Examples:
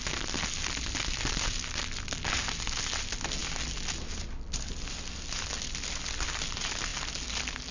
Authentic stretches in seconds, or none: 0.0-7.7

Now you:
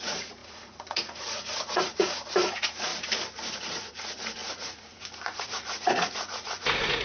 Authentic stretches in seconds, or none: 2.9-3.6

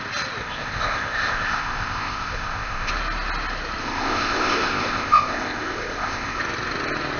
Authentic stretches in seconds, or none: 0.0-0.4; 2.9-3.8; 6.4-7.2

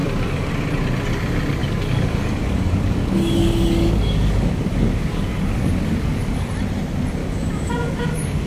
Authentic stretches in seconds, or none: 0.5-1.6; 6.5-7.2